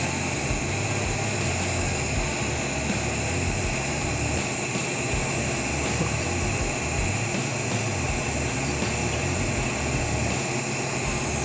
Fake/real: real